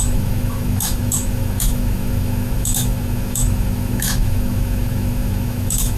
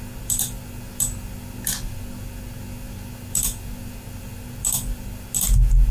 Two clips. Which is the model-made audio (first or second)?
first